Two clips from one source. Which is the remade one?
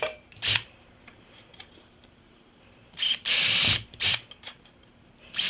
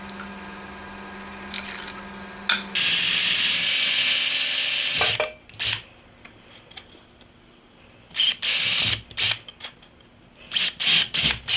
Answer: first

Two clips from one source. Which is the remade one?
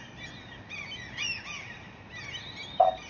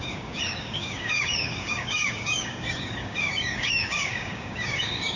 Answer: second